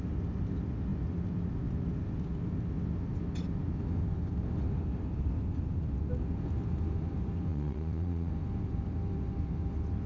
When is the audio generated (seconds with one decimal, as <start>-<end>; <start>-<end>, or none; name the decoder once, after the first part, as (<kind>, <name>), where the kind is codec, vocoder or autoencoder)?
7.5-8.3 (vocoder, Vocos)